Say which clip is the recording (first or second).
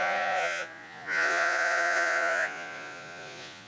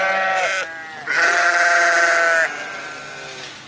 second